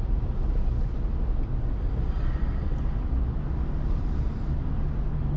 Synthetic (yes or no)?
no